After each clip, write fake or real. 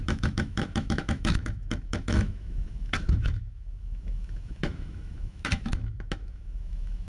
fake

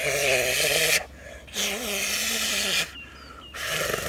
real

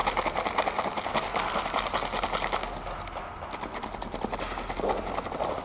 real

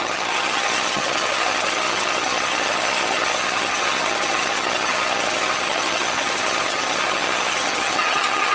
fake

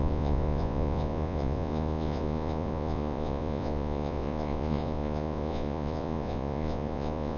fake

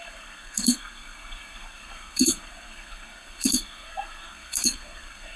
fake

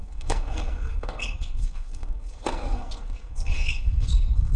fake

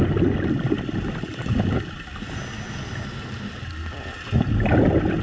real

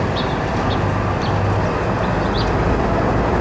real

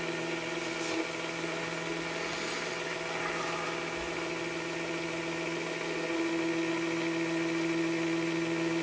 real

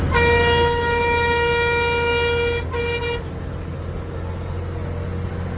real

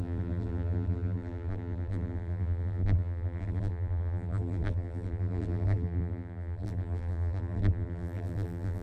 fake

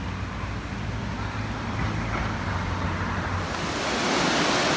real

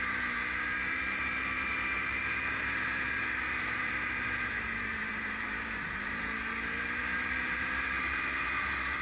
fake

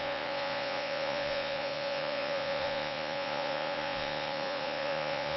fake